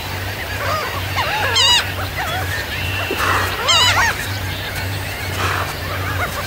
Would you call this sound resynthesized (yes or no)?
yes